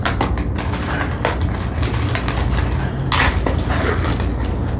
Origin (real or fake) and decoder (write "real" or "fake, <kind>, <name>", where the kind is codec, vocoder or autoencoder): real